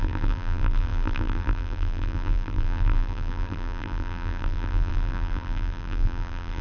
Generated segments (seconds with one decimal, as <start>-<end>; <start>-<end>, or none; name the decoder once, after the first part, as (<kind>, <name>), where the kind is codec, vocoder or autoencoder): 0.0-6.6 (vocoder, BigVGAN v2)

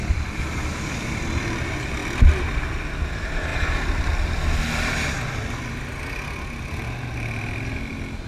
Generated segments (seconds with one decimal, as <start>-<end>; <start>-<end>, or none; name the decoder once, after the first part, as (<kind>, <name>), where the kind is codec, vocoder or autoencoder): none